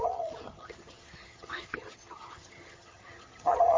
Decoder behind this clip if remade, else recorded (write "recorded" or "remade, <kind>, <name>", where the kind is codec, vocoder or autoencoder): remade, vocoder, HiFi-GAN